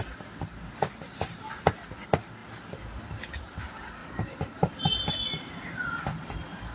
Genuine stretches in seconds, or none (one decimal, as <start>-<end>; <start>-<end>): 0.0-4.0; 5.1-6.7